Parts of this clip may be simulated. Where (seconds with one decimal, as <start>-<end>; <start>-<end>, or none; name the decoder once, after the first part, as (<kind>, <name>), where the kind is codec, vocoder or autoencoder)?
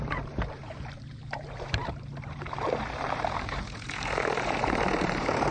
0.0-5.5 (vocoder, BigVGAN v2)